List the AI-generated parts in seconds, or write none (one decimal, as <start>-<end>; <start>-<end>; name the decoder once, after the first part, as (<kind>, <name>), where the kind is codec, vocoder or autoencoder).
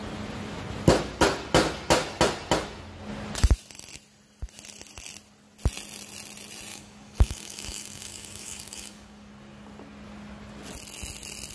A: 6.7-9.3 (codec, DAC)